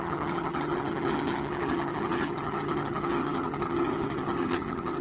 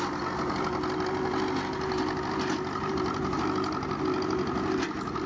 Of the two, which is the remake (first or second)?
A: first